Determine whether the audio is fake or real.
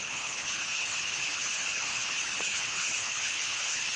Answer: fake